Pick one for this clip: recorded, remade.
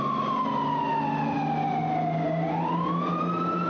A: recorded